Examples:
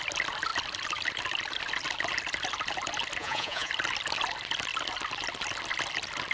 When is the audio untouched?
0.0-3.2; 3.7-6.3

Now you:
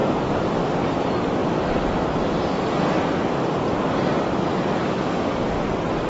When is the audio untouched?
1.0-1.4; 2.5-6.1

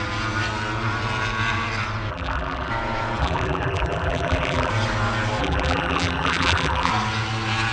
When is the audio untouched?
0.0-2.1; 2.7-3.2; 4.7-5.4; 6.9-7.7

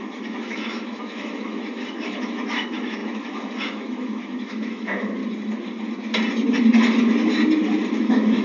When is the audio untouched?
5.2-7.9

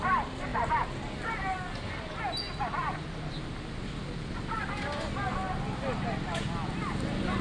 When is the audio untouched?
0.0-7.4